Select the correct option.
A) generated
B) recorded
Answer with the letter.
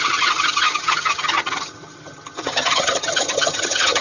A